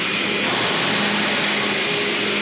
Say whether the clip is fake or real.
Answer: real